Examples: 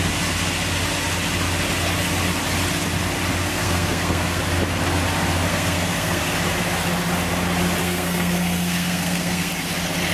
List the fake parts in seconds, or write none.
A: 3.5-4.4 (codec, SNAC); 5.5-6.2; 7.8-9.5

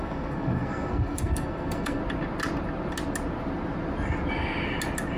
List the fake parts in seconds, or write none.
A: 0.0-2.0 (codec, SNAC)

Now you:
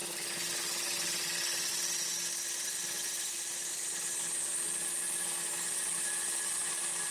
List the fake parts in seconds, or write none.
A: none

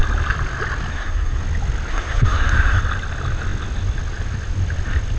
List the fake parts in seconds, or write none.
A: 0.9-1.4 (codec, SNAC); 1.9-2.8